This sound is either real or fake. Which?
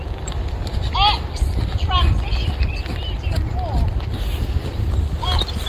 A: real